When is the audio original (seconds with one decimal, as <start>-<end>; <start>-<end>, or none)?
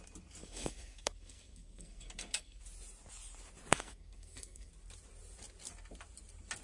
0.0-0.4; 2.6-3.7; 4.7-6.6